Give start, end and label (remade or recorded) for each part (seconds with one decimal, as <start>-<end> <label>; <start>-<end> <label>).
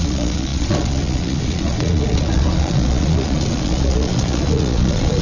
0.0-5.2 remade